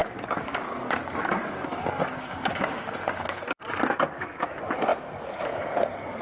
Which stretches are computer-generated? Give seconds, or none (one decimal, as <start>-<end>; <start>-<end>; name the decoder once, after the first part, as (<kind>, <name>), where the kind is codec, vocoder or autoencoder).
0.0-3.7 (codec, DAC)